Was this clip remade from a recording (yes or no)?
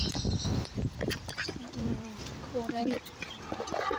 yes